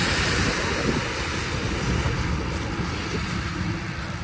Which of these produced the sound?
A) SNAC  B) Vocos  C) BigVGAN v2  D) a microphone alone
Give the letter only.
D